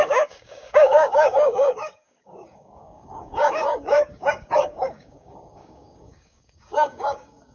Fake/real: fake